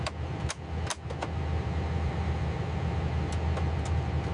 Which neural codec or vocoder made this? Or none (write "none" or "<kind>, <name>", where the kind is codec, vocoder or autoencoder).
none